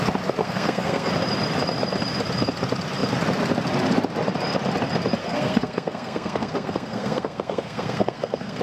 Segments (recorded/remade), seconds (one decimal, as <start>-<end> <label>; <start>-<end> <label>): 0.0-0.4 recorded; 0.4-1.1 remade; 1.1-5.2 recorded; 5.2-8.6 remade